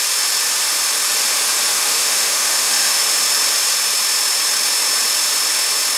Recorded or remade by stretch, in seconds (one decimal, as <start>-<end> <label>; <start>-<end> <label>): 0.0-1.7 recorded; 1.7-3.0 remade; 3.0-6.0 recorded